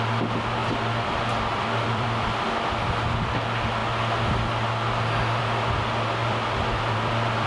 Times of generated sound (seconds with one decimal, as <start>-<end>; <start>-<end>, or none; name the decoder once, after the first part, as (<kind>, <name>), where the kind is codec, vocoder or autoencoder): 0.6-2.4 (vocoder, BigVGAN v2); 6.2-7.5